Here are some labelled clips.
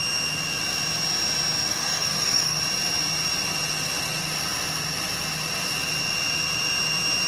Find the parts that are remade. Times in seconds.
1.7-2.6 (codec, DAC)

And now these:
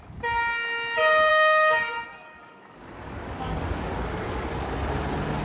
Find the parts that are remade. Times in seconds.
1.3-4.5 (codec, DAC)

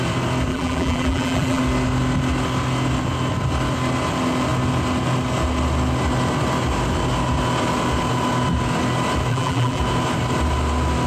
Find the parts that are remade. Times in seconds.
0.5-1.6 (vocoder, BigVGAN v2); 9.3-9.8

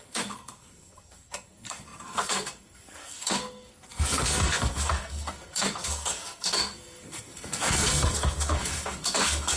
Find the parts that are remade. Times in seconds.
0.0-9.6 (codec, SNAC)

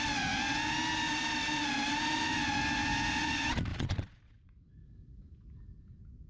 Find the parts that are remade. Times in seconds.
3.7-4.5 (vocoder, Vocos)

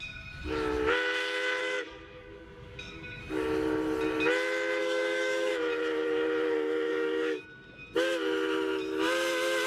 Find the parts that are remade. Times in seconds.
1.6-3.2 (codec, DAC); 4.8-5.5; 6.9-7.4